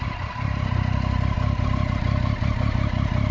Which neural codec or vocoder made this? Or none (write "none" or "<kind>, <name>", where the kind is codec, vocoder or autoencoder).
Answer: none